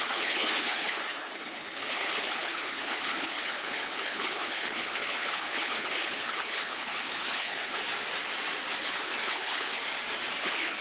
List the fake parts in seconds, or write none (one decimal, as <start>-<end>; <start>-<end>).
0.0-7.8; 8.8-9.8; 10.4-10.8

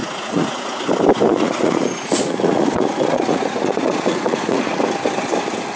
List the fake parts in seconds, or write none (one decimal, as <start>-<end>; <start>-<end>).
0.0-0.9; 1.3-4.8

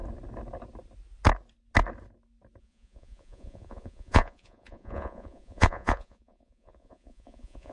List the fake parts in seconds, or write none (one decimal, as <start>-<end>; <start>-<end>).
2.6-7.7

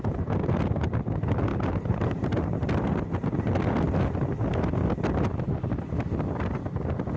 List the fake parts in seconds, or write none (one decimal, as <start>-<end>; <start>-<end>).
none

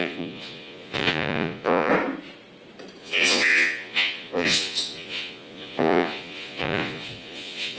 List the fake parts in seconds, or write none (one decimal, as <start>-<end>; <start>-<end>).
0.0-1.9; 3.0-7.8

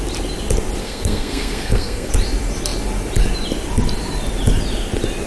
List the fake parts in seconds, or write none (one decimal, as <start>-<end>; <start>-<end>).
0.8-2.1